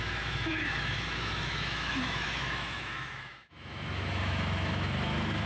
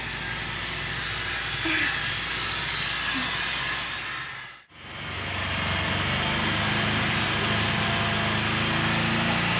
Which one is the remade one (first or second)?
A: first